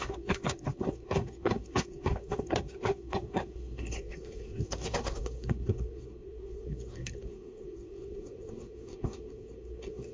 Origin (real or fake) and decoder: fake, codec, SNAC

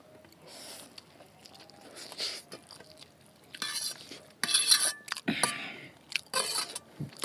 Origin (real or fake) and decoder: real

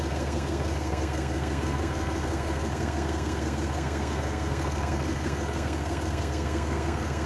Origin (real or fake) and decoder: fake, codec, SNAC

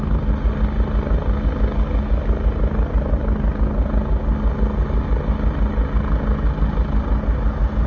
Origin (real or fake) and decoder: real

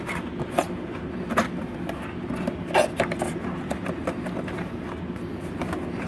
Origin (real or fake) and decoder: real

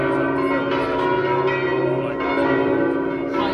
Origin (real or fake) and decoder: real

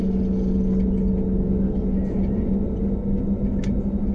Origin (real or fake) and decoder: real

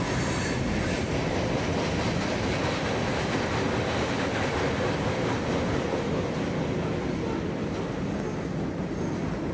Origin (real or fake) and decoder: real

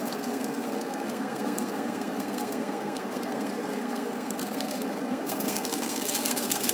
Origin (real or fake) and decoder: fake, codec, SNAC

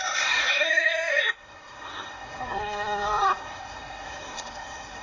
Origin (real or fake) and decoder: fake, codec, SNAC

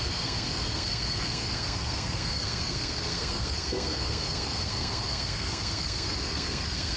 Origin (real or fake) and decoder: fake, codec, SNAC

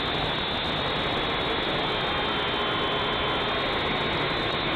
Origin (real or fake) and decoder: real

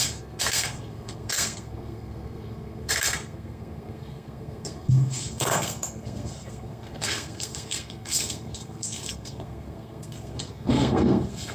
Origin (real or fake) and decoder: fake, codec, SNAC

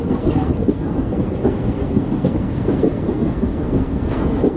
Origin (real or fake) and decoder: fake, codec, SNAC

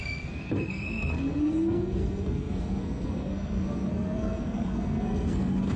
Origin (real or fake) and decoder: fake, codec, SNAC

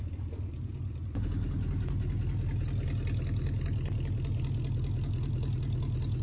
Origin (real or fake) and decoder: real